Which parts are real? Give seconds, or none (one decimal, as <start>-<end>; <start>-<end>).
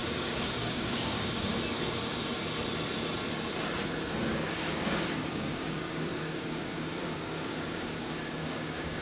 1.5-4.3